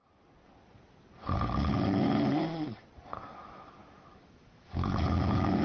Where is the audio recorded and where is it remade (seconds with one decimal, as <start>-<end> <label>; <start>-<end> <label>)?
0.0-3.4 recorded; 3.4-5.6 remade